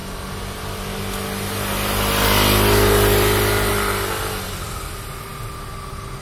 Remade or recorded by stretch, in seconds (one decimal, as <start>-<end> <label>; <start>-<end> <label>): 0.0-6.2 recorded